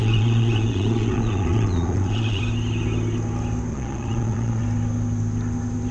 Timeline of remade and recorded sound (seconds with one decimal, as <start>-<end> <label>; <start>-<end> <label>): 0.0-2.4 remade; 2.4-3.7 recorded; 3.7-4.6 remade; 4.6-5.9 recorded